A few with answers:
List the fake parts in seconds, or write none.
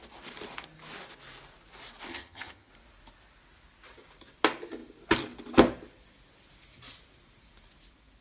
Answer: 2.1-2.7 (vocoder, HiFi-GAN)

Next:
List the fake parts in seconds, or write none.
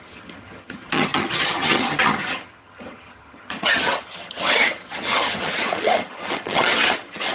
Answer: 0.0-7.3 (vocoder, HiFi-GAN)